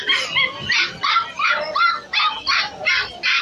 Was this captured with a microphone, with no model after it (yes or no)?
yes